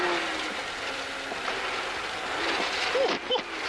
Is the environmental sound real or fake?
real